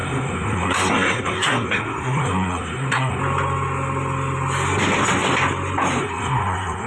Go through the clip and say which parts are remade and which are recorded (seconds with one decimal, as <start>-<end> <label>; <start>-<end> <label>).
0.0-3.2 remade; 3.2-6.0 recorded; 6.0-6.9 remade